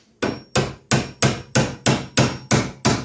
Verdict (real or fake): real